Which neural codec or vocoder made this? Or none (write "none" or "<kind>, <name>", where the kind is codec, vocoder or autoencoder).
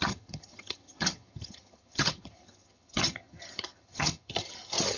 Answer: vocoder, HiFi-GAN